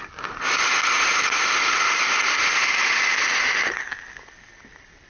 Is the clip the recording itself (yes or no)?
yes